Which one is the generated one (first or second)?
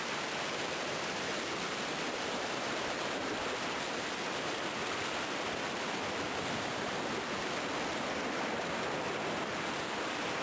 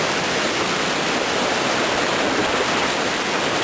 first